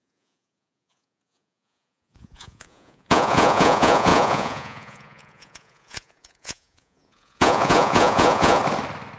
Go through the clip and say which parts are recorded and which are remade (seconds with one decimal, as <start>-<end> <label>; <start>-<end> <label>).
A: 0.0-8.6 remade; 8.6-9.2 recorded